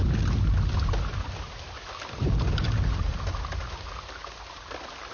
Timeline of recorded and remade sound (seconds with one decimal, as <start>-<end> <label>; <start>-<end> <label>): 0.0-5.1 recorded